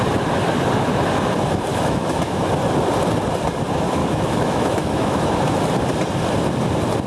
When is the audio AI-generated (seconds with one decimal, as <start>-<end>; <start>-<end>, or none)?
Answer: 1.7-2.5; 4.0-5.3